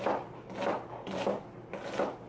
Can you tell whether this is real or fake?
real